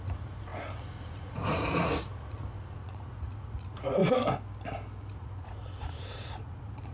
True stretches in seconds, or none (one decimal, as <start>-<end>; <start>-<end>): 4.0-5.1